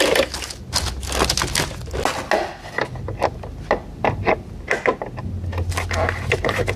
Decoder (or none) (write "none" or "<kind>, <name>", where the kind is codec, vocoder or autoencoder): none